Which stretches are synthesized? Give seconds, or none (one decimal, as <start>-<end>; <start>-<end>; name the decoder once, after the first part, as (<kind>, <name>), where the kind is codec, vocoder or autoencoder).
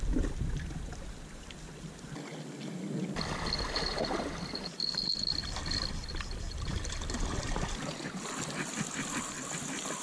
none